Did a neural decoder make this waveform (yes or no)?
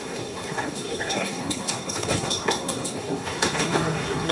yes